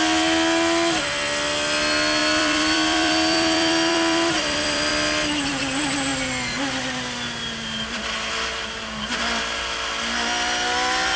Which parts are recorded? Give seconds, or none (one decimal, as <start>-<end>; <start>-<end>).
0.0-2.2; 4.9-11.2